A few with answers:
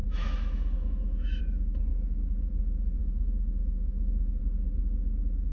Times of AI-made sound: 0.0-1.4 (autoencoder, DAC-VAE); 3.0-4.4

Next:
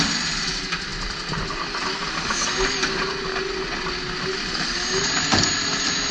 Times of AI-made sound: none

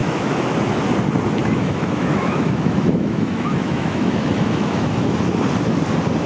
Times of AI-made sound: 0.0-0.5 (autoencoder, DAC-VAE); 1.4-5.2

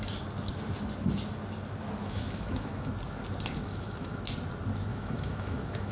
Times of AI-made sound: 2.0-2.9 (autoencoder, DAC-VAE); 3.6-4.2; 4.9-5.9

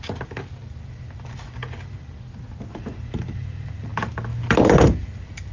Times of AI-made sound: none

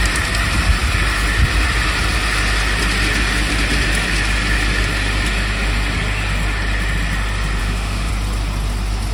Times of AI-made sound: 7.6-8.1 (autoencoder, DAC-VAE)

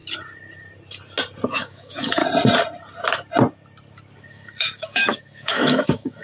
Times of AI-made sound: 1.5-2.2 (autoencoder, DAC-VAE); 4.3-6.2